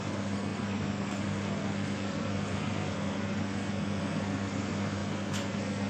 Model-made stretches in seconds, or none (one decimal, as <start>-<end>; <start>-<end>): 0.0-5.9